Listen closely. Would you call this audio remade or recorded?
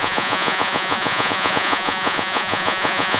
remade